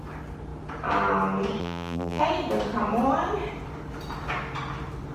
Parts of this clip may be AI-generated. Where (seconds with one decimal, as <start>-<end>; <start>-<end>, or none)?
1.6-2.2